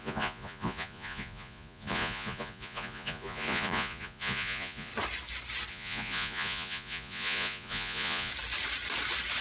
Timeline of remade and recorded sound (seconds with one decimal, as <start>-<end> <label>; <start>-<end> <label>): 0.0-4.9 remade; 4.9-5.7 recorded; 5.7-8.3 remade; 8.3-9.4 recorded